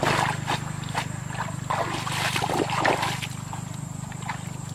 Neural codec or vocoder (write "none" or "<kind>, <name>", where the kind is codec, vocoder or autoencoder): none